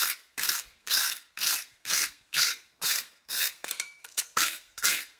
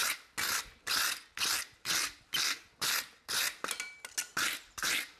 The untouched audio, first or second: second